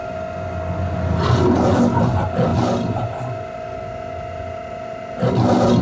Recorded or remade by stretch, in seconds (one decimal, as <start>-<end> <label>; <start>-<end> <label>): 0.0-5.8 recorded

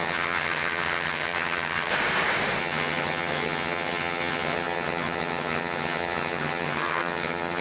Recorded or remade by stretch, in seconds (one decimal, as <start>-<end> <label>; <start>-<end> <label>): 0.0-1.9 remade; 1.9-2.6 recorded; 2.6-7.6 remade

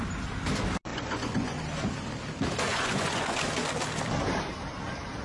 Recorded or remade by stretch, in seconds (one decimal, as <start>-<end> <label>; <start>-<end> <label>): 0.0-0.9 recorded; 0.9-1.6 remade; 1.6-2.7 recorded; 2.7-3.4 remade; 3.4-5.2 recorded

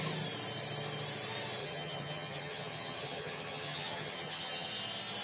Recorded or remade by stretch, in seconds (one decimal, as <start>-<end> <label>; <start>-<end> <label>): 0.0-1.6 recorded; 1.6-4.7 remade; 4.7-5.2 recorded

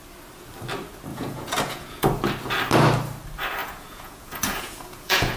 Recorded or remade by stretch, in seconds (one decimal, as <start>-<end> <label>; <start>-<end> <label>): 0.0-1.1 recorded; 1.1-2.0 remade; 2.0-3.6 recorded; 3.6-5.4 remade

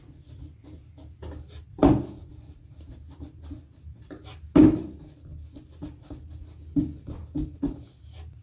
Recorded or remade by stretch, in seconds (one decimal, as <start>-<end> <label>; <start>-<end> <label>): 0.0-8.4 recorded

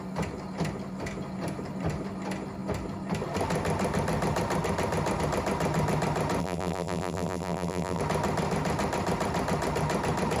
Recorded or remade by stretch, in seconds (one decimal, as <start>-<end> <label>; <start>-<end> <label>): 0.0-6.4 recorded; 6.4-8.0 remade; 8.0-10.4 recorded